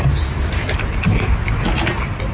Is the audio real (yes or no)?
yes